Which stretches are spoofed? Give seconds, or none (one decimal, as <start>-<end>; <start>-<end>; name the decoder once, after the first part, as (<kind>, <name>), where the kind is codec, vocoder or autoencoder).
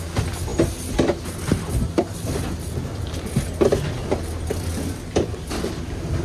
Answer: none